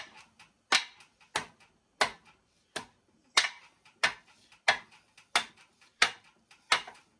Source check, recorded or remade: recorded